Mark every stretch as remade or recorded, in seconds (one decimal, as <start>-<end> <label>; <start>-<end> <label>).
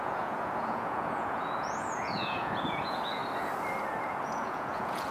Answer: 0.0-3.2 remade; 3.2-4.0 recorded; 4.0-5.1 remade